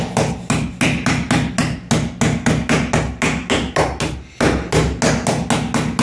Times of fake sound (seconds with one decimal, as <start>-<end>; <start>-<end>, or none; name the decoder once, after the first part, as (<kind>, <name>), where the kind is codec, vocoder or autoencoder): none